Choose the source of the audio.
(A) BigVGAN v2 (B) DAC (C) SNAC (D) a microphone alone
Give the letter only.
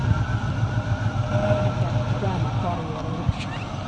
A